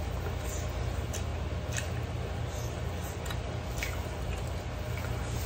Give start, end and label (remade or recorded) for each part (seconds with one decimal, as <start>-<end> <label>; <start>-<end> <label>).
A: 0.0-5.5 recorded